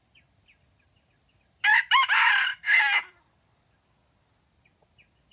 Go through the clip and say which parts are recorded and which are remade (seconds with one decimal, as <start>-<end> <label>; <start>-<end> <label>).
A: 0.0-1.7 recorded; 1.7-2.3 remade; 2.3-5.3 recorded